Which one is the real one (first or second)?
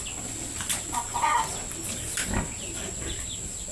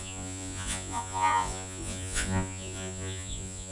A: first